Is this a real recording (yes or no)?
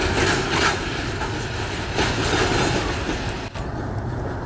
yes